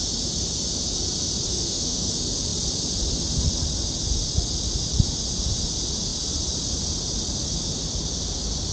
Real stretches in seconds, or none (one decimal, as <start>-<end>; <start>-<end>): 0.0-1.5; 2.1-8.7